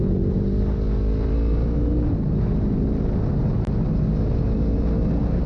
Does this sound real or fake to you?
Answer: real